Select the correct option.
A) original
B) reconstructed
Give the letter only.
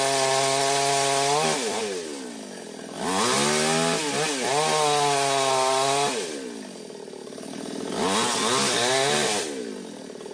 A